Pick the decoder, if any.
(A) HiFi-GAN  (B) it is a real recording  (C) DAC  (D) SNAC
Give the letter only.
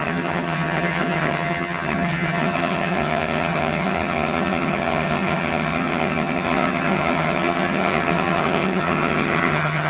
A